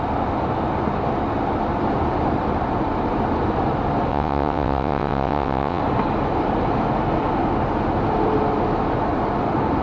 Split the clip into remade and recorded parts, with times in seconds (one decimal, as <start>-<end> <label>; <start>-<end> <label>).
0.0-4.1 recorded; 4.1-5.8 remade; 5.8-9.8 recorded